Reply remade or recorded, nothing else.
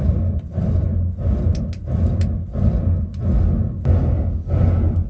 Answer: recorded